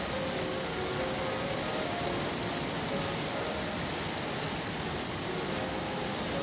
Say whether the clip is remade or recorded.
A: recorded